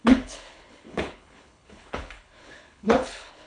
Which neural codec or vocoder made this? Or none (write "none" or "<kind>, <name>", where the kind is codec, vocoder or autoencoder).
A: codec, HILCodec